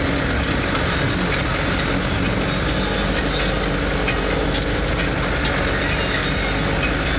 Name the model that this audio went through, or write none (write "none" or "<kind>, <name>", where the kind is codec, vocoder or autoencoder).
none